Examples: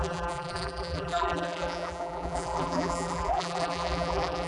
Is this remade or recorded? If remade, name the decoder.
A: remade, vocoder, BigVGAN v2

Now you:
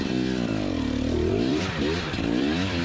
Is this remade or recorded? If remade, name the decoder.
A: remade, vocoder, BigVGAN v2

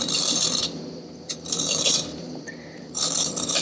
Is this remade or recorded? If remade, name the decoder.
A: remade, vocoder, BigVGAN v2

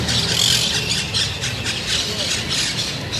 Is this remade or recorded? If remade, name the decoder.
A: recorded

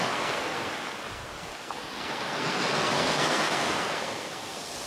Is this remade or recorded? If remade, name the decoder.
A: remade, codec, SNAC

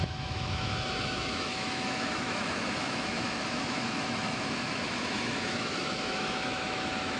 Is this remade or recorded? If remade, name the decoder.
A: remade, autoencoder, DAC-VAE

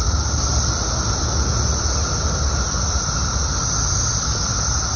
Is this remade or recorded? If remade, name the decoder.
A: recorded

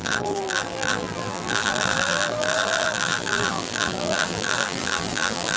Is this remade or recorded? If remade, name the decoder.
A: remade, vocoder, BigVGAN v2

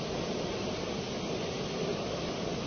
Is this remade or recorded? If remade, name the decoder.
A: recorded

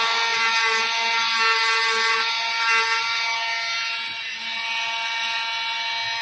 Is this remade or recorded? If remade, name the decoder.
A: recorded